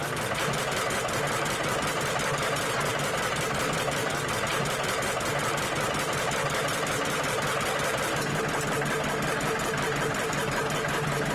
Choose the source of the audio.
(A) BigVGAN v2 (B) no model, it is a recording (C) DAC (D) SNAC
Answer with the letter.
B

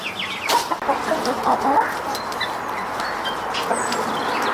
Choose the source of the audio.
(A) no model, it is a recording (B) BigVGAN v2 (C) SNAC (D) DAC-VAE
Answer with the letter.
A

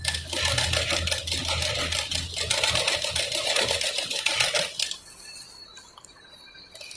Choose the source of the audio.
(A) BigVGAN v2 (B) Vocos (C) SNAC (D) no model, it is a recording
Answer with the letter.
D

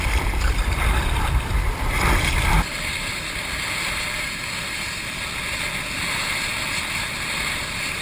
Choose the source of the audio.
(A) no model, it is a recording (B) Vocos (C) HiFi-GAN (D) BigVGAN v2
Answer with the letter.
D